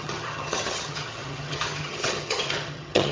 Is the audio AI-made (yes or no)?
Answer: yes